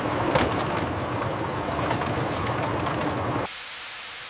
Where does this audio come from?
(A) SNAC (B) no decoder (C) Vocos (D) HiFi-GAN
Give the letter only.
B